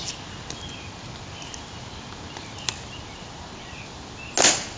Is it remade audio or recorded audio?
recorded